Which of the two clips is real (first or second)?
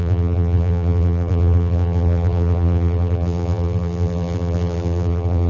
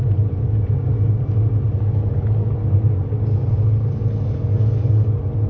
second